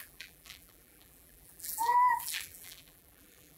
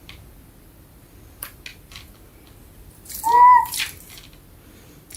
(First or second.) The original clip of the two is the second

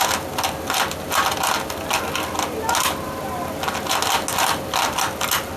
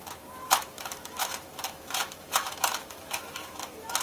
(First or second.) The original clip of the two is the first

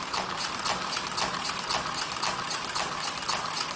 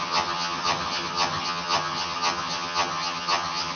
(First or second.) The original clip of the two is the first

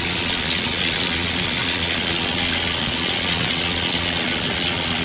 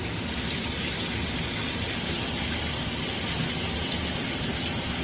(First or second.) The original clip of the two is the second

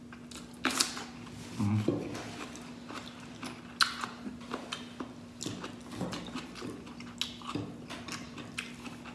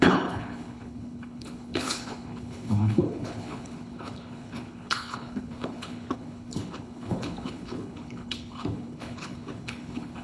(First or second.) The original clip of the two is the first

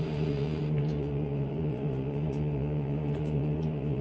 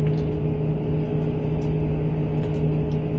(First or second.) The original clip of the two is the second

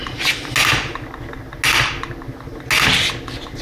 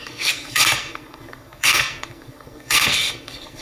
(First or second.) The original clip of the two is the first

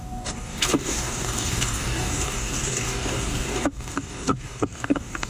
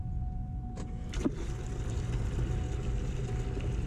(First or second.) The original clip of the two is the second